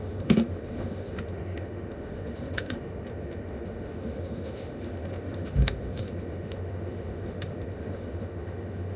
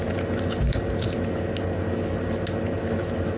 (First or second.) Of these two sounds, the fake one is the first